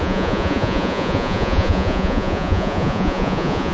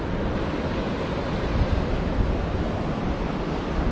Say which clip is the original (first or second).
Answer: second